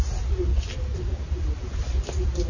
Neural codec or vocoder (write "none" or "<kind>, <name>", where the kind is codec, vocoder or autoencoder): none